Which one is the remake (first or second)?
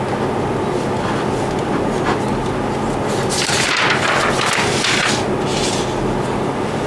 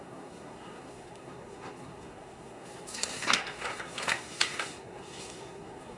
second